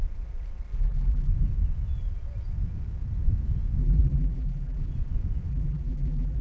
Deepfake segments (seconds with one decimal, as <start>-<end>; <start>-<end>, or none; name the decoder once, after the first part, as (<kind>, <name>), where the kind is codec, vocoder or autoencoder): 0.7-1.3 (vocoder, BigVGAN v2); 3.8-4.9; 5.5-6.4